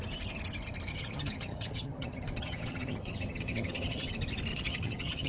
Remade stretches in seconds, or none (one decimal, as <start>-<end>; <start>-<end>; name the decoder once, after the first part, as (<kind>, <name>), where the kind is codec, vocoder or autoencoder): 0.9-4.1 (vocoder, HiFi-GAN); 4.5-5.3